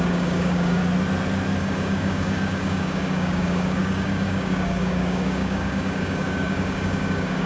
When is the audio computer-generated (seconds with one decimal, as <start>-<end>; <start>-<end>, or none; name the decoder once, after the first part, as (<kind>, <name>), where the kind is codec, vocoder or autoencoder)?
0.0-0.8 (codec, DAC); 1.6-7.5